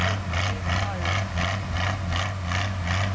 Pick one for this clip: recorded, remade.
recorded